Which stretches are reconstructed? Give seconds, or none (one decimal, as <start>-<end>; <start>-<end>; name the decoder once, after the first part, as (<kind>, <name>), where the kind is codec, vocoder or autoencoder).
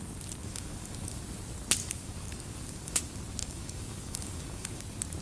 0.4-1.2 (codec, DAC); 1.8-3.0; 3.4-4.8